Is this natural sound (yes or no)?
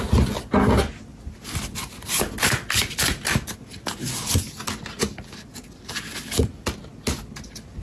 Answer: yes